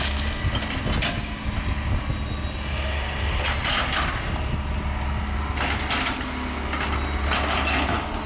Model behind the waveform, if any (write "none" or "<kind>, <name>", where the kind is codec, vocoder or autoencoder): none